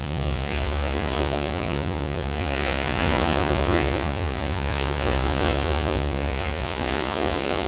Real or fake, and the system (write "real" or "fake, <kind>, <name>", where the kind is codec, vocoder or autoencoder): fake, vocoder, Vocos